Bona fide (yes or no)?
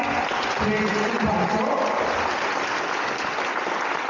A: yes